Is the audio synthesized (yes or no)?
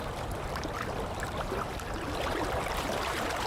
no